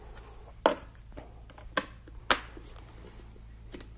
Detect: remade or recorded recorded